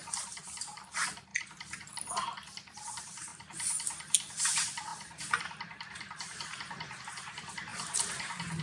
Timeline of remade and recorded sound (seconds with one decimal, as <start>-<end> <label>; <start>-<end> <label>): 0.0-1.3 remade; 1.3-1.9 recorded; 1.9-3.3 remade; 3.3-4.4 recorded; 4.4-8.6 remade